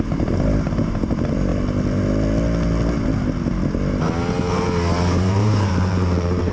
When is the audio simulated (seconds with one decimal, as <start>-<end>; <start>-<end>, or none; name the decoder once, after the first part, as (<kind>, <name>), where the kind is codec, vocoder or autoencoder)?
0.0-1.5 (vocoder, BigVGAN v2); 4.9-6.5